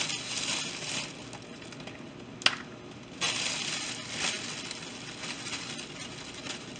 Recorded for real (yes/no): yes